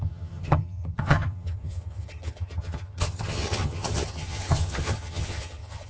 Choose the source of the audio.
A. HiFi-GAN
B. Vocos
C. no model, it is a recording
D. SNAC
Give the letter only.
A